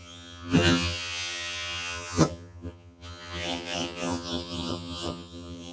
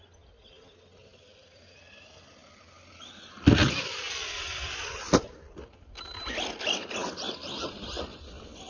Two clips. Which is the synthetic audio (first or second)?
first